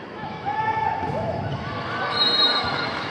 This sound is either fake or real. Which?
fake